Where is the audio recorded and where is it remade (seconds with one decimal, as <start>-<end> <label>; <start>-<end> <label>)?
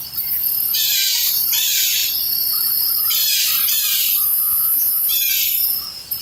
0.0-4.3 recorded; 4.3-5.1 remade; 5.1-6.2 recorded